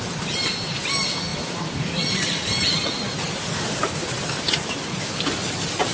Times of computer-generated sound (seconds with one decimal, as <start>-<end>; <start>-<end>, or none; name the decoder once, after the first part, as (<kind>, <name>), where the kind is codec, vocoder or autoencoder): 1.3-2.1 (vocoder, BigVGAN v2)